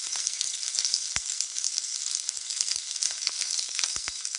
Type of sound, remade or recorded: remade